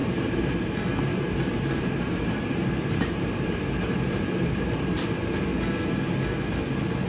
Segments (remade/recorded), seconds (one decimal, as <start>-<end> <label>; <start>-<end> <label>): 0.0-0.5 remade; 0.5-1.1 recorded; 1.1-5.4 remade; 5.4-7.1 recorded